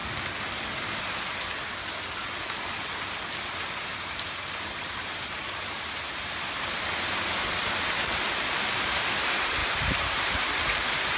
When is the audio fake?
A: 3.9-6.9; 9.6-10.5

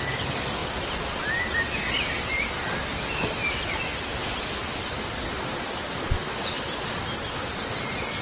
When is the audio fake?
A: 0.0-0.6; 5.4-7.0; 7.6-8.2

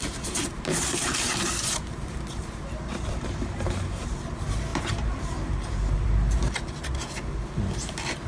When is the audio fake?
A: 0.4-4.0; 4.7-6.1

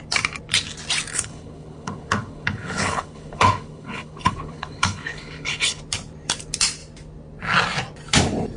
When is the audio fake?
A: 1.1-5.8

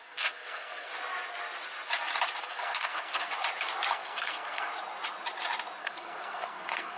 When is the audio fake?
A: 0.0-0.9; 2.4-3.3; 3.9-4.7; 5.8-7.0

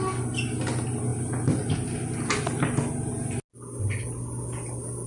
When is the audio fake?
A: none